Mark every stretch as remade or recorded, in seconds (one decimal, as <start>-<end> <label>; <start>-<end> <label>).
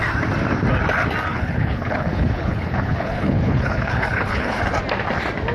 0.0-1.3 recorded; 1.3-4.6 remade; 4.6-5.5 recorded